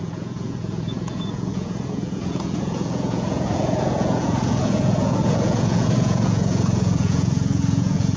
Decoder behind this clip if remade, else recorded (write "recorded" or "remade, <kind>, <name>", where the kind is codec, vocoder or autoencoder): remade, vocoder, Vocos